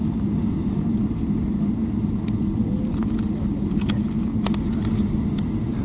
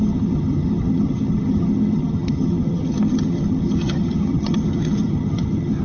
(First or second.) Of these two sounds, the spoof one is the second